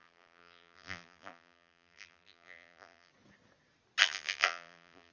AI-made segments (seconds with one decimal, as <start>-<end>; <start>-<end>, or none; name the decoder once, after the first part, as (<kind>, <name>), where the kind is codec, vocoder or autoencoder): 0.0-3.1 (vocoder, BigVGAN v2); 4.0-5.1